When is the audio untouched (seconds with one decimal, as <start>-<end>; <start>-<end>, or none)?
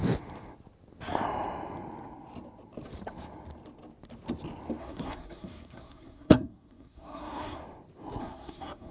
0.0-4.8; 7.6-8.2